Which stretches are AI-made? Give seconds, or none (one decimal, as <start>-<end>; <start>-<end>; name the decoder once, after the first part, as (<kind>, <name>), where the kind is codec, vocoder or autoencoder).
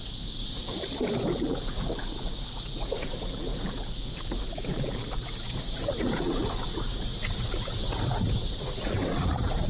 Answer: 0.0-0.7 (vocoder, Vocos); 1.3-9.7